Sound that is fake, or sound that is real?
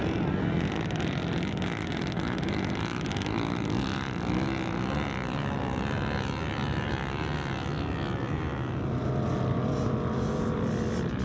real